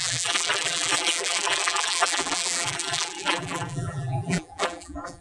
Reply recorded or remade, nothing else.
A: remade